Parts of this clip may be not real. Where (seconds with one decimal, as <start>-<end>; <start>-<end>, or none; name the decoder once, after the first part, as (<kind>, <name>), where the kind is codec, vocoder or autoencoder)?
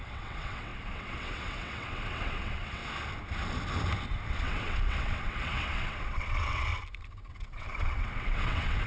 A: 0.0-2.8 (vocoder, WaveNeXt); 4.3-6.7; 7.3-8.9